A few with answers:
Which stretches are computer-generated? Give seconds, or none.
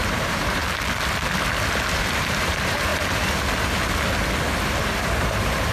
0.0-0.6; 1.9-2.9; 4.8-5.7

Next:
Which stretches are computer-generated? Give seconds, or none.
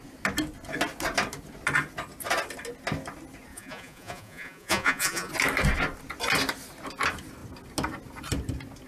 3.5-5.3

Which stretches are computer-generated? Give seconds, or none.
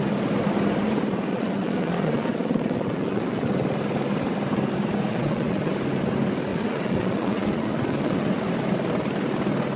1.3-3.5; 5.1-5.7; 6.5-8.3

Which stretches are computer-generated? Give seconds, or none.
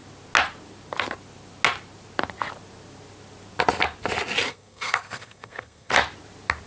4.5-5.9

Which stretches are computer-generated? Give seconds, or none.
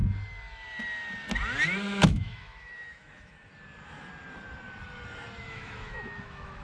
2.0-3.5; 5.4-6.6